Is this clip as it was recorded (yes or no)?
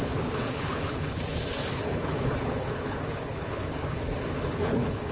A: no